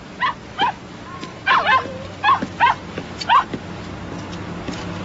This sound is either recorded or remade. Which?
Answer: recorded